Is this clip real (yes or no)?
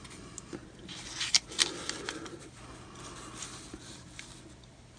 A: yes